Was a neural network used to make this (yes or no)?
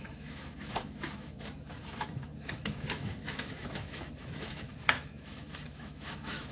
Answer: yes